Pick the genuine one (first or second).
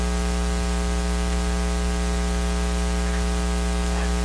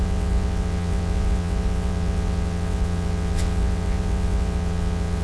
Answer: first